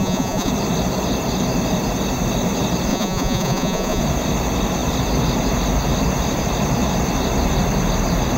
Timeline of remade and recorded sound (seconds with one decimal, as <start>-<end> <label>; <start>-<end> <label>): 0.0-0.5 remade; 0.5-2.9 recorded; 2.9-4.0 remade; 4.0-8.4 recorded